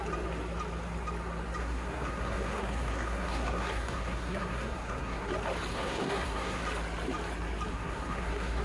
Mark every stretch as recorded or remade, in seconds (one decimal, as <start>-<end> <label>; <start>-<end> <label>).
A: 0.0-1.6 recorded; 1.6-5.3 remade; 5.3-5.7 recorded; 5.7-6.6 remade; 6.6-7.7 recorded; 7.7-8.6 remade